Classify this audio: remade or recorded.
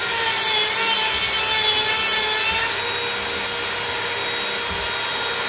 recorded